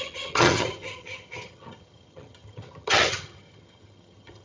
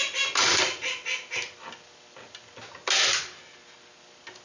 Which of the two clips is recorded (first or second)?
second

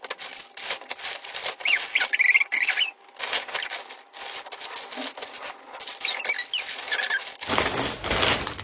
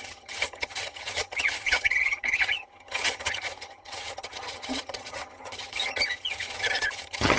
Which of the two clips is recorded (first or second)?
first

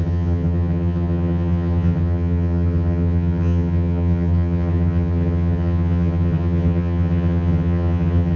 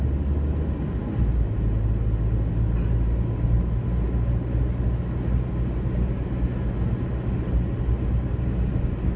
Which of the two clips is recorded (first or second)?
second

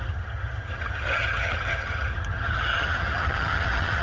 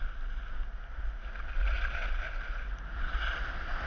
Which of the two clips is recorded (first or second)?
second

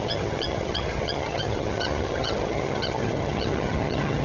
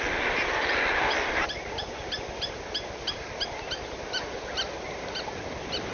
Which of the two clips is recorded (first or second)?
second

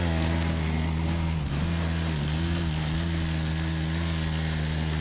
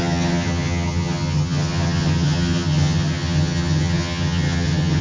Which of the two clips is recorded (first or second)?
first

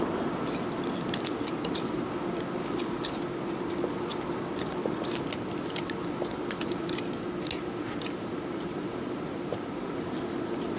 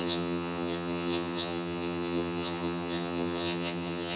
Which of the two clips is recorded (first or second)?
first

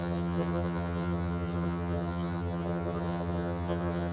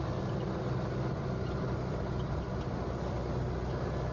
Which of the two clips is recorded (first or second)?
second